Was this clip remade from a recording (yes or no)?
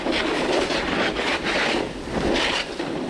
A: no